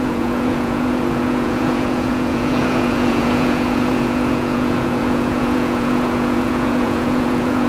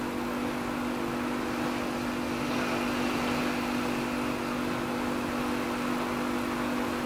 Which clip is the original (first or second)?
second